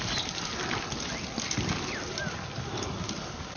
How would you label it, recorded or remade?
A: recorded